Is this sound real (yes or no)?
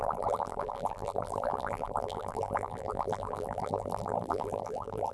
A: no